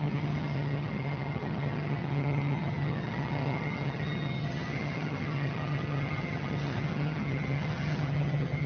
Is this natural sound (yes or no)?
no